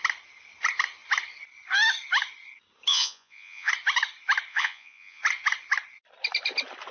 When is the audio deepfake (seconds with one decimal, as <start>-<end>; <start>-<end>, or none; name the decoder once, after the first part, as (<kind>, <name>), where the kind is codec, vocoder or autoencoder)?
2.9-3.7 (vocoder, Vocos); 4.5-5.2

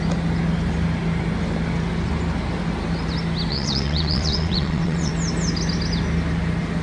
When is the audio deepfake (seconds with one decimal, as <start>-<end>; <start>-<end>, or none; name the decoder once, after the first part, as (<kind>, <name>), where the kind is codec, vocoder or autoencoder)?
3.5-5.1 (vocoder, WaveNeXt)

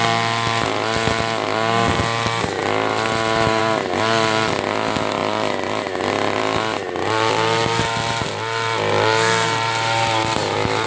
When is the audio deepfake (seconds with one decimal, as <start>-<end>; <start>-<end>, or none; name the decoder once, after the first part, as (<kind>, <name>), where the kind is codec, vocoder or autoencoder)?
none

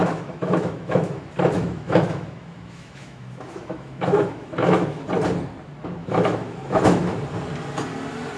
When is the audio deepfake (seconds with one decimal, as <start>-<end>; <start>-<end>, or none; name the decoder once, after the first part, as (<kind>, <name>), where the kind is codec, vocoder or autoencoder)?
0.0-5.0 (autoencoder, DAC-VAE); 6.0-7.2

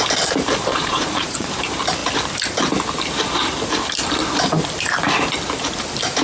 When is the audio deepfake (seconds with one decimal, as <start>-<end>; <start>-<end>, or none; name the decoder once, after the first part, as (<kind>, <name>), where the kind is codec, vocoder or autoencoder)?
0.7-1.5 (vocoder, Vocos)

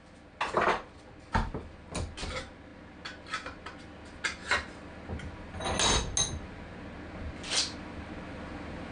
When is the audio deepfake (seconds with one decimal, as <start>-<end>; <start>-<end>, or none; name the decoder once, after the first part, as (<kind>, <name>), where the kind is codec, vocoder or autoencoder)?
none

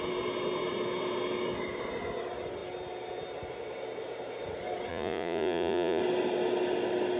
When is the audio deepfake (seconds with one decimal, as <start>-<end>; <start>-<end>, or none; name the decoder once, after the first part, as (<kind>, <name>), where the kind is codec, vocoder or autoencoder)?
4.9-6.0 (vocoder, Vocos)